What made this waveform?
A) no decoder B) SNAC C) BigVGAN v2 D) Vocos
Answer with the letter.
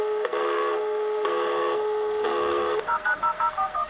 B